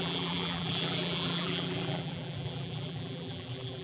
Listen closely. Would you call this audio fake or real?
fake